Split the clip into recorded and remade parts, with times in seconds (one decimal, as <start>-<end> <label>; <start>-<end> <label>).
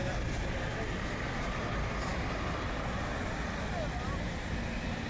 0.0-5.1 recorded